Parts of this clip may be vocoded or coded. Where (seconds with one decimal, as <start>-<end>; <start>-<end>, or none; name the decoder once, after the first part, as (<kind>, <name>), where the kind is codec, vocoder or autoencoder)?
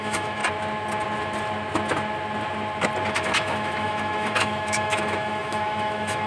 0.0-0.4 (autoencoder, DAC-VAE); 3.1-6.3